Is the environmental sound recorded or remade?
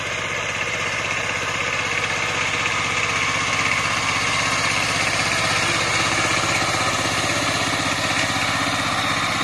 recorded